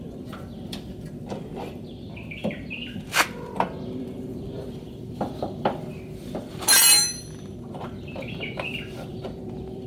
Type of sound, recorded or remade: remade